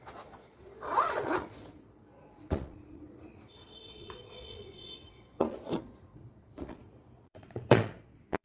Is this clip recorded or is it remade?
remade